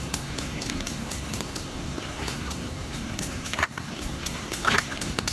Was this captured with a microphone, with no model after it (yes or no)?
no